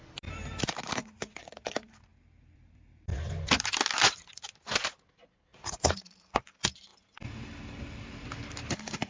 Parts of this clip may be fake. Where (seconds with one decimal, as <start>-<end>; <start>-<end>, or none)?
1.0-1.7; 5.5-6.4